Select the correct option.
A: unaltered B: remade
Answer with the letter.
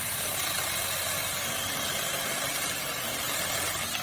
A